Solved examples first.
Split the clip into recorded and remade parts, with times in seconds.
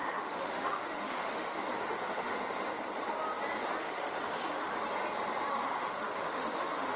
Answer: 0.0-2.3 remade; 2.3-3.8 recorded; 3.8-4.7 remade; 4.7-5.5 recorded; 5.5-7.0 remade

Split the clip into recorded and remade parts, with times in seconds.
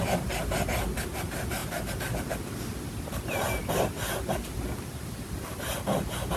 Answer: 0.0-6.4 recorded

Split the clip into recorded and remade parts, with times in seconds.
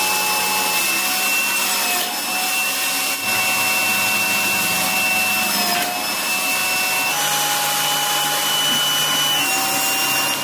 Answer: 0.0-10.4 recorded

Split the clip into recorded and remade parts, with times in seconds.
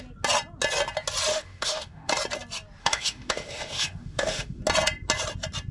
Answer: 0.0-1.3 recorded; 1.3-2.1 remade; 2.1-2.8 recorded; 2.8-4.6 remade; 4.6-5.7 recorded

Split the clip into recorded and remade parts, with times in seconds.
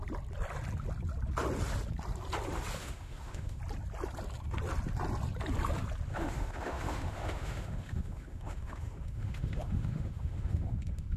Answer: 0.0-2.8 recorded; 2.8-3.6 remade; 3.6-6.1 recorded; 6.1-11.2 remade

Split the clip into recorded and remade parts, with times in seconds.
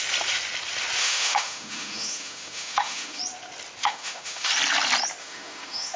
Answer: 0.0-1.0 recorded; 1.0-3.2 remade; 3.2-3.8 recorded; 3.8-4.5 remade; 4.5-5.2 recorded; 5.2-6.0 remade